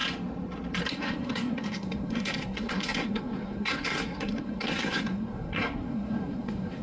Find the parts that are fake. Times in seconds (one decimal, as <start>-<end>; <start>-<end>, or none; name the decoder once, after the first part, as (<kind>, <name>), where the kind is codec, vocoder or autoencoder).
0.9-6.8 (codec, SNAC)